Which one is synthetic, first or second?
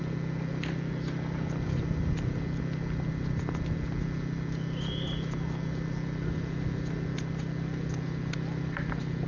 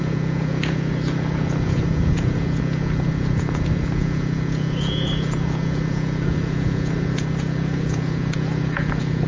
second